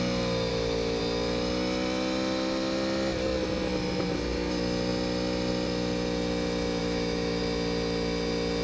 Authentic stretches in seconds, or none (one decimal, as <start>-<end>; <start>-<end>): 0.0-0.5; 1.0-6.8; 7.4-8.6